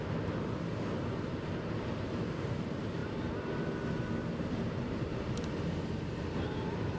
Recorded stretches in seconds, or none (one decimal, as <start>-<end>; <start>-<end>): 0.0-3.0; 3.5-4.2; 5.3-7.0

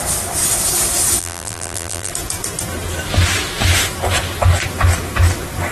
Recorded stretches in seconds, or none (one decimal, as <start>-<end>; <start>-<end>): 0.0-1.2; 2.1-5.7

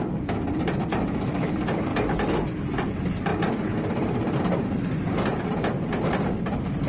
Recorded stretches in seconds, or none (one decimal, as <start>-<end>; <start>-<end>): 1.9-2.6

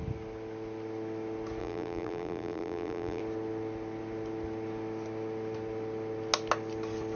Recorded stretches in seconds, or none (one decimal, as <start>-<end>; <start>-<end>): 0.0-1.6; 3.2-7.2